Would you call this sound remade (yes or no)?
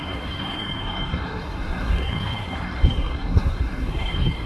yes